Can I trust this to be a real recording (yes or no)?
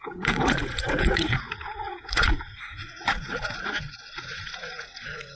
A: no